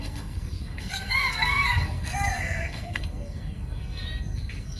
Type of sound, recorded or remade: remade